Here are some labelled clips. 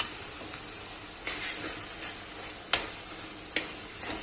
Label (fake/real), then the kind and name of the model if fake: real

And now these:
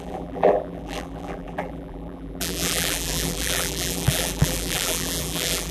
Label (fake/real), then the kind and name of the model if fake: fake, vocoder, BigVGAN v2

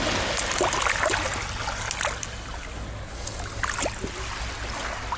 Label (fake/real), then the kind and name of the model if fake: real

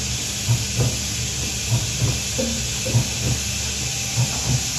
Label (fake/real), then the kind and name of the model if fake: real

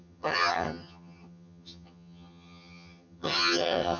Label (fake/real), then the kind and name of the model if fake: fake, vocoder, HiFi-GAN